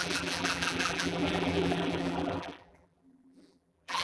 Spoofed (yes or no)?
yes